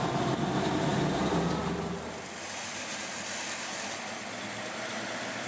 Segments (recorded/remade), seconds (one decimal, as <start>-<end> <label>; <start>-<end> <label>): 0.0-5.5 recorded